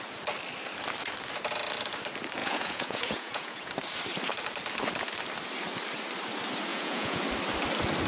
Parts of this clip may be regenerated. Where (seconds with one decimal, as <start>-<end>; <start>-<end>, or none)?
2.4-3.7; 6.7-7.2